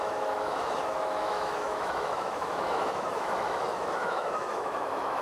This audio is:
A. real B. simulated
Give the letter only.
B